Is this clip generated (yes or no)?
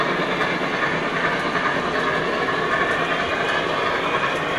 no